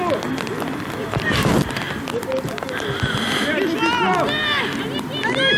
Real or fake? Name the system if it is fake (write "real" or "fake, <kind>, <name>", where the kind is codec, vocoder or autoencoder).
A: real